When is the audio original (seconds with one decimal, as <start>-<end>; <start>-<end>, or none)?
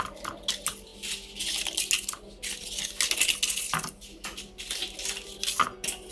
0.0-6.1